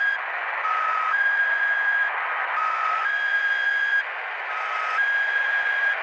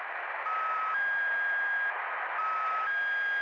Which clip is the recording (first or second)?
second